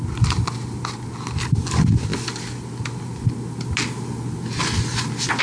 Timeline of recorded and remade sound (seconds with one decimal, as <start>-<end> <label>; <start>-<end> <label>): 0.0-5.4 recorded